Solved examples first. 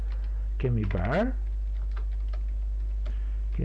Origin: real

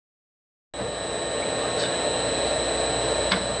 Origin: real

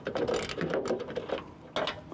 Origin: real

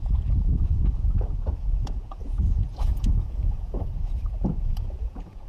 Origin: fake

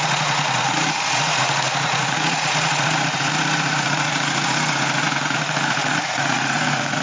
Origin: fake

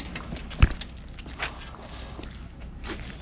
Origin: real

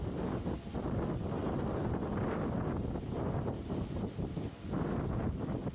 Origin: real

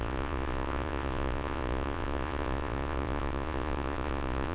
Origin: fake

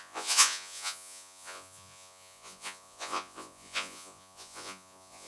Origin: fake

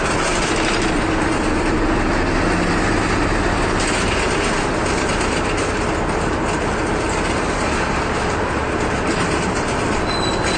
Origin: real